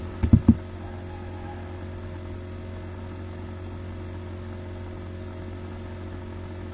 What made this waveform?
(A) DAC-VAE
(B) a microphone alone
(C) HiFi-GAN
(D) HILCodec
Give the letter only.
B